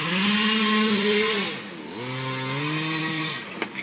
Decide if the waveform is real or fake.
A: real